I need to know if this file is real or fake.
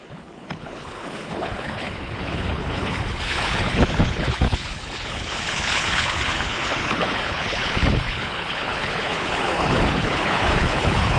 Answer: fake